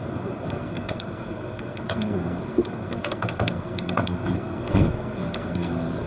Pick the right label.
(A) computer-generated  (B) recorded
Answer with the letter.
A